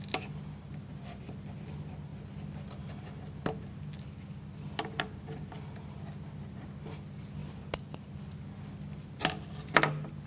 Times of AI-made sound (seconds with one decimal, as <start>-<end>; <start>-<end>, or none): none